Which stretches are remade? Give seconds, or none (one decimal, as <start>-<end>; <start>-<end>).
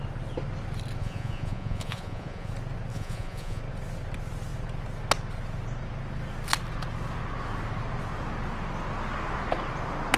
1.0-2.5; 2.9-3.6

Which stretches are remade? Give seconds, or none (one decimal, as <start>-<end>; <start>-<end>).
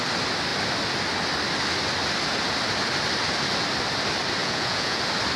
4.4-5.0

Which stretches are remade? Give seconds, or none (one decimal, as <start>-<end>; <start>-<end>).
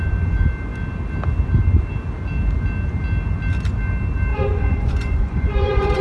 4.3-6.0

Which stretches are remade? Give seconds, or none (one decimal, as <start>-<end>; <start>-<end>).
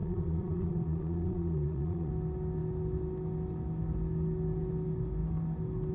0.0-2.1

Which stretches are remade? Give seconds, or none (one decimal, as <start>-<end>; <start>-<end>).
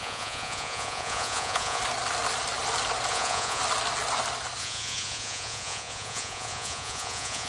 0.0-1.8; 3.1-3.6; 4.6-7.5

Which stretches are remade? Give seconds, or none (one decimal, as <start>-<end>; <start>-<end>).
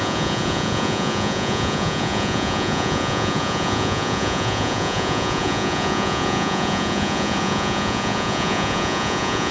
0.0-9.5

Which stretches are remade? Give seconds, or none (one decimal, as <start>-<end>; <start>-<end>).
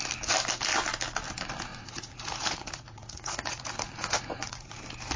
1.7-4.8